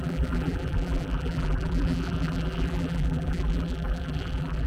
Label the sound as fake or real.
fake